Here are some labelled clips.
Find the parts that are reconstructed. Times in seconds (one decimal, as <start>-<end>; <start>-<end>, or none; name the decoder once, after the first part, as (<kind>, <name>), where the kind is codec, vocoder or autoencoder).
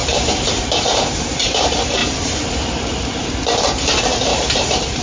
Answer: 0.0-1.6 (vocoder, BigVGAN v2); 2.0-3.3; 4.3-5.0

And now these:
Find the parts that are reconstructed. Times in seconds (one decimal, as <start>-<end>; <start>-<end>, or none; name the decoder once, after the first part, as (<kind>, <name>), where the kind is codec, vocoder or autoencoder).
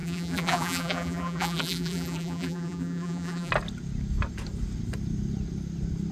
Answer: 0.0-3.5 (vocoder, BigVGAN v2)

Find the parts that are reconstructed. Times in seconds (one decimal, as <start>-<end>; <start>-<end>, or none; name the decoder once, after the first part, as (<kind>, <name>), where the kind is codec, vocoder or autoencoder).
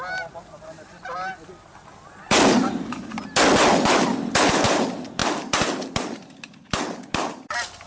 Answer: none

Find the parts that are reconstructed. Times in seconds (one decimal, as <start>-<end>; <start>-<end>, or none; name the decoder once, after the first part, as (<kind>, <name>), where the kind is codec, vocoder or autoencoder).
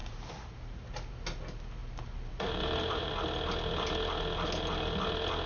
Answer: 0.0-1.1 (vocoder, BigVGAN v2); 1.8-3.1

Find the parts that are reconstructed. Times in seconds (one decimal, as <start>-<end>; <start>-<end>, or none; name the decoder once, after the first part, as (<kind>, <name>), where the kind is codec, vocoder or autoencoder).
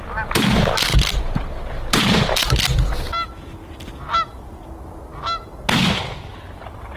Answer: 0.9-1.4 (vocoder, BigVGAN v2)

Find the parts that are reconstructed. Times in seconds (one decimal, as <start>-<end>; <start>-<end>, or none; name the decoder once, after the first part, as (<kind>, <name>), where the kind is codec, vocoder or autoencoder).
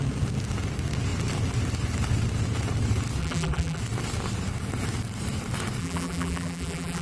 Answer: 3.2-3.8 (vocoder, BigVGAN v2); 5.8-7.0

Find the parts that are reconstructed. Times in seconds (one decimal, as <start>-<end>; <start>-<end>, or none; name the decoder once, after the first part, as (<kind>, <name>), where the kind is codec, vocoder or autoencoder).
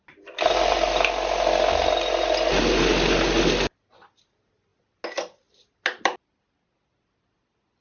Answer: none